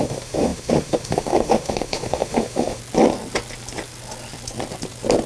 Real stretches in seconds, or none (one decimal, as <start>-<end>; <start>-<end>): 2.8-5.3